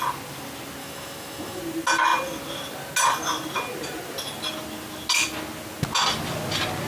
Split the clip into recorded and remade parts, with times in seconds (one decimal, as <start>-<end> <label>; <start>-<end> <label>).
0.0-0.8 recorded; 0.8-1.6 remade; 1.6-6.9 recorded